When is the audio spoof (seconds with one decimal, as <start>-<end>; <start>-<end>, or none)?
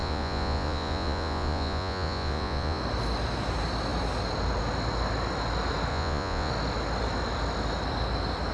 0.0-2.8; 5.9-6.5